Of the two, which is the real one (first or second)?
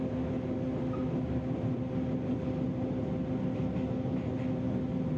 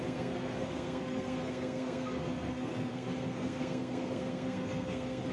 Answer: first